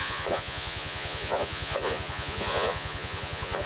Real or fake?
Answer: fake